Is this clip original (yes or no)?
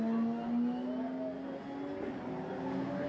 yes